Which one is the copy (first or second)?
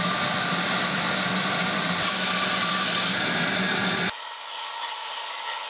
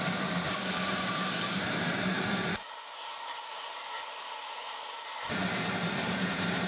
second